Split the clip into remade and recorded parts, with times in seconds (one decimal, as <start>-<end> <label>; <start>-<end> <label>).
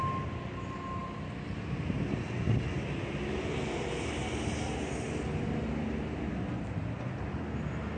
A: 0.0-8.0 recorded